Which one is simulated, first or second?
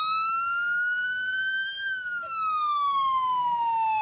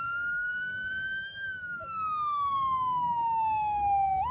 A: second